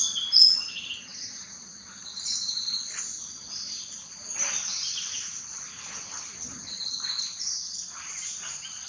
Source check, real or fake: real